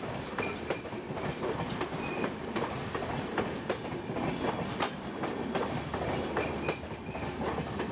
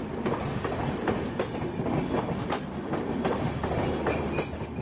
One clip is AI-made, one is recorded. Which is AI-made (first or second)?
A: first